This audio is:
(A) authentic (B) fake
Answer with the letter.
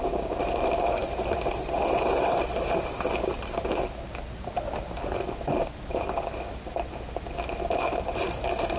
A